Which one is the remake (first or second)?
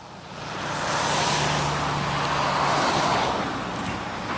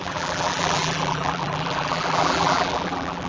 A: second